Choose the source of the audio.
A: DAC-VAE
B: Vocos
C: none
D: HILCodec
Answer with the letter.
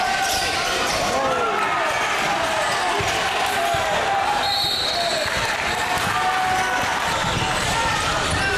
C